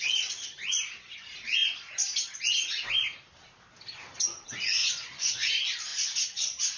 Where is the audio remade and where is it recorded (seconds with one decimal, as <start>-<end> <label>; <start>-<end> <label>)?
0.0-4.8 recorded; 4.8-5.5 remade; 5.5-6.8 recorded